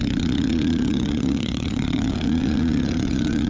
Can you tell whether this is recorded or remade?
remade